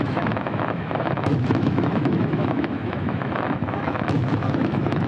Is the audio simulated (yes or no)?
yes